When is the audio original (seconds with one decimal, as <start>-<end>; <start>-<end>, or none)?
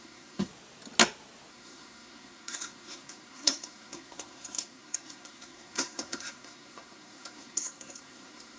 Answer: 0.5-1.5